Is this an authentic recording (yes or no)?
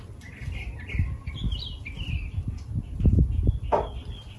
yes